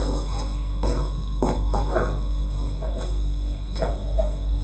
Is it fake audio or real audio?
fake